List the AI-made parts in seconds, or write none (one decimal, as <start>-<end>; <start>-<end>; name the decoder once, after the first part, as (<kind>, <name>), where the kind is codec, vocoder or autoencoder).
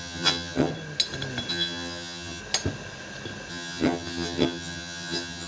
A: 0.0-0.7 (vocoder, HiFi-GAN); 1.5-2.4; 3.5-5.5